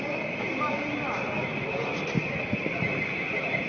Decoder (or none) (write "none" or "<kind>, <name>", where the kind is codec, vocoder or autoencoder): none